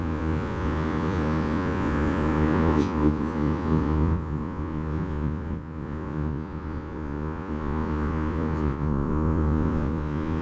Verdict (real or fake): fake